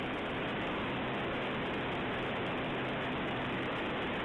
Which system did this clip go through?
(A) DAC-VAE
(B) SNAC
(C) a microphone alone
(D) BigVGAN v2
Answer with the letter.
C